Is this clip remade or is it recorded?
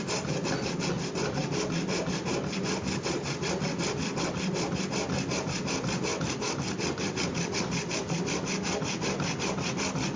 recorded